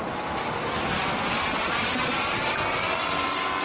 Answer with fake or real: real